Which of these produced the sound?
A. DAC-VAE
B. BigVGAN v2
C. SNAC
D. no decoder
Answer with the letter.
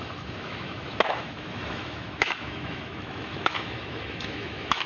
A